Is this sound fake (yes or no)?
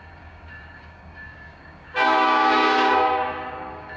yes